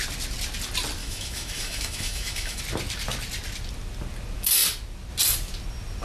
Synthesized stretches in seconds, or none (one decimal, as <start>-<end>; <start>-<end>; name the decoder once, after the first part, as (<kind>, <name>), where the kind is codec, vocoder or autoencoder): 1.0-2.6 (autoencoder, DAC-VAE)